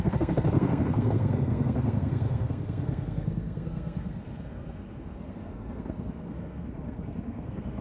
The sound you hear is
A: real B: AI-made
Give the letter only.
B